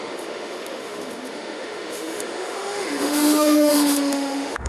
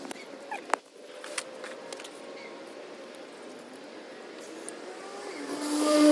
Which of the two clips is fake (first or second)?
first